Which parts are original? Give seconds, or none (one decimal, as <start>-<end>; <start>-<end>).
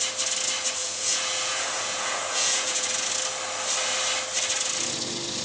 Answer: 0.0-0.8; 3.1-5.4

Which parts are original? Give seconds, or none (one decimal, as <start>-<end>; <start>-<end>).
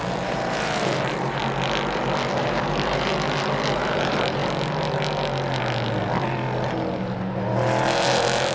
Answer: 1.4-2.4; 3.1-3.7; 4.4-7.8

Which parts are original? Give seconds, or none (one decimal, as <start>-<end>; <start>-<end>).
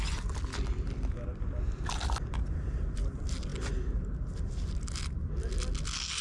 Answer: 0.0-6.2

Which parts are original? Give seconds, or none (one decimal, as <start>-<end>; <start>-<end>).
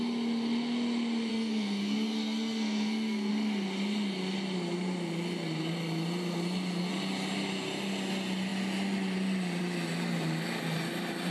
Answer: 0.0-1.3; 3.3-11.3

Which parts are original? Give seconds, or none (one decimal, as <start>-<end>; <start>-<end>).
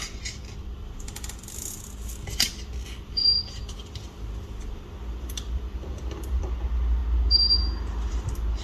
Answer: 7.0-8.1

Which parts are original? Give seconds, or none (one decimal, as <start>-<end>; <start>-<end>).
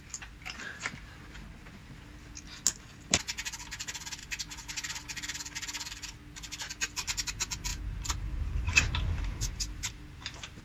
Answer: 0.0-4.2; 5.0-7.7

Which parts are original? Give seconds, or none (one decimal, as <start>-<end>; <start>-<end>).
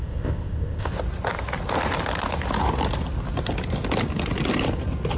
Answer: 0.9-5.2